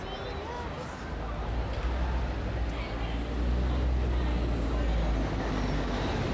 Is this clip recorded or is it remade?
recorded